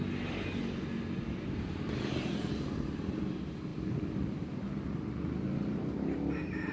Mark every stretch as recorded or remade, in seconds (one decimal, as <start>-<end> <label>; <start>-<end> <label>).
0.0-6.7 recorded

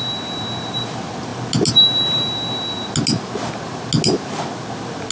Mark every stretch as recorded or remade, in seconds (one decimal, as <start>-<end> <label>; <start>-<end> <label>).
0.0-5.1 recorded

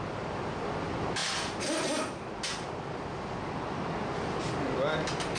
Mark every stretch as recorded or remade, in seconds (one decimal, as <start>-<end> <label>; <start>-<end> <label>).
0.0-5.4 recorded

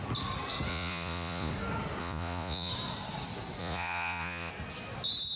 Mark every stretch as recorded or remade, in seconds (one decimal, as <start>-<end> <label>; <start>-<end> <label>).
0.0-0.7 recorded; 0.7-1.5 remade; 1.5-2.0 recorded; 2.0-2.7 remade; 2.7-3.6 recorded; 3.6-4.5 remade; 4.5-5.4 recorded

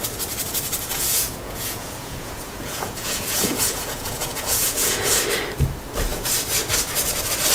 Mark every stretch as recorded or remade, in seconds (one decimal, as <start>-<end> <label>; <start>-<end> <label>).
0.0-0.9 recorded; 0.9-5.2 remade; 5.2-7.5 recorded

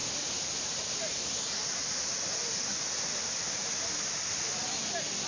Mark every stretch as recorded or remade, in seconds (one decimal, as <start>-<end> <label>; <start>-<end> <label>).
0.0-5.3 recorded

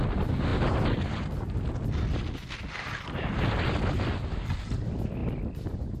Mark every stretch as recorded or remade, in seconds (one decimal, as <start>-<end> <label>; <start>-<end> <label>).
0.0-6.0 recorded